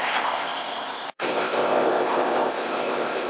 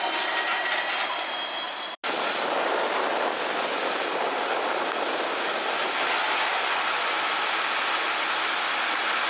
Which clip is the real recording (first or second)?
second